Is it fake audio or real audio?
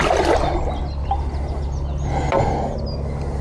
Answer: real